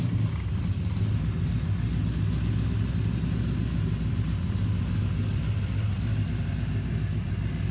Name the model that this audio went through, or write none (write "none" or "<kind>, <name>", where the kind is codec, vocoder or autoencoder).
none